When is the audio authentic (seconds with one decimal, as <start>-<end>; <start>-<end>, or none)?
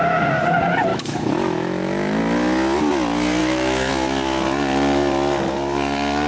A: 0.0-0.9; 2.2-3.4; 3.9-6.3